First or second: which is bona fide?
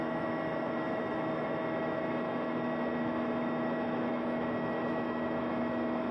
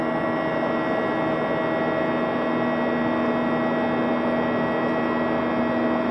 second